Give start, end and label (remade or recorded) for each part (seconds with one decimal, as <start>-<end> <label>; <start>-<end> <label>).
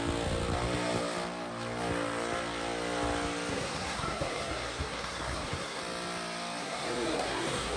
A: 0.0-3.5 recorded; 3.5-5.8 remade; 5.8-6.6 recorded; 6.6-7.8 remade